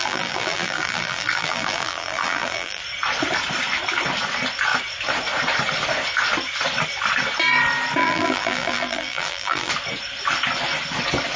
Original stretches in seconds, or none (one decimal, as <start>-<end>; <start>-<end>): 2.8-8.0; 9.7-11.4